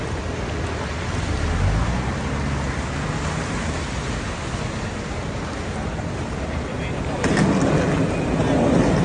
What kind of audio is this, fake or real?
real